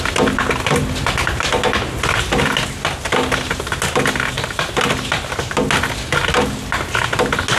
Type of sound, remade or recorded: recorded